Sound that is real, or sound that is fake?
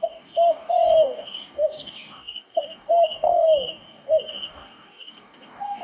fake